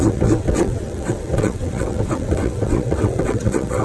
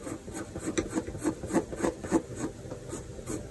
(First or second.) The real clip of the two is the second